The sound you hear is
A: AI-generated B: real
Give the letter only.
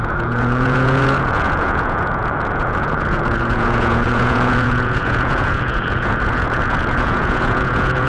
A